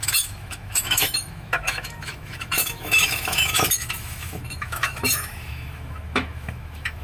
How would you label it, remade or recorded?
remade